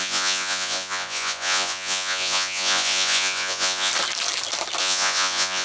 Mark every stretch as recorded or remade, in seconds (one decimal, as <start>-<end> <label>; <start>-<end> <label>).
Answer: 0.0-3.9 remade; 3.9-4.8 recorded; 4.8-5.6 remade